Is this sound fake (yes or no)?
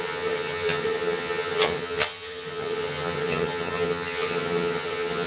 yes